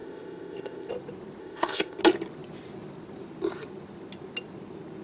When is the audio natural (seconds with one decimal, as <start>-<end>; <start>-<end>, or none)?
0.9-1.4; 2.0-5.0